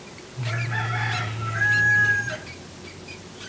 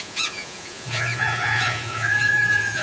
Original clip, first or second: first